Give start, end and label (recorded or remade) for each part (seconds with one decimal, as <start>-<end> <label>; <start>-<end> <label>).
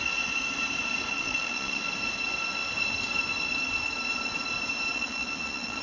0.0-1.1 recorded; 1.1-1.8 remade; 1.8-4.9 recorded; 4.9-5.8 remade